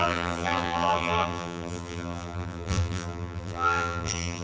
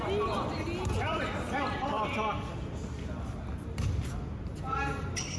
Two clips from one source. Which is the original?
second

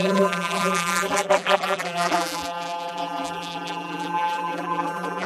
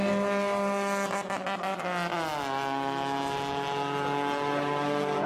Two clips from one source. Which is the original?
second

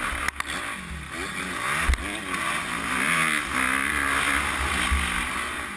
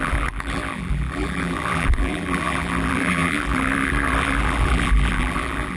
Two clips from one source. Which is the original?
first